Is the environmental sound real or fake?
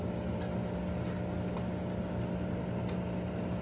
real